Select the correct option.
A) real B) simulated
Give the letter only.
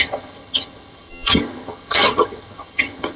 B